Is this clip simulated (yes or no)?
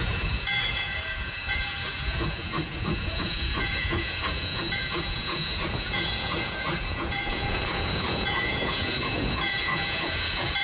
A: yes